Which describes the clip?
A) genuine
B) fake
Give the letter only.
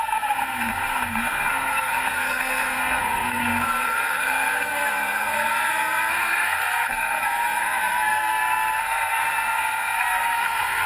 B